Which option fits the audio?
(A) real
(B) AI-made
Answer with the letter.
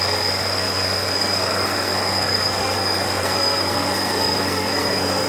B